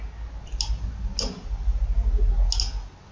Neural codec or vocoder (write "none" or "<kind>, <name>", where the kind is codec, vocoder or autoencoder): none